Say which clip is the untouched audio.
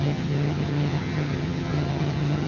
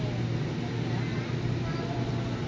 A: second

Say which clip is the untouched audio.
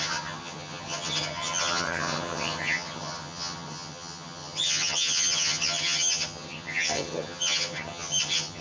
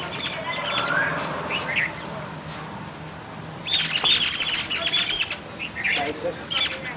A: second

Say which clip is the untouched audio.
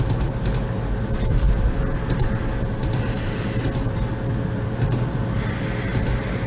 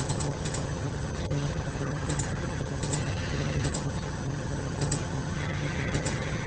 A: first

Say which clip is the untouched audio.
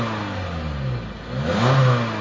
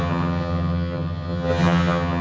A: first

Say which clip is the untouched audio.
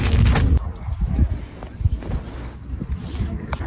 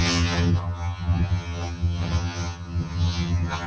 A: first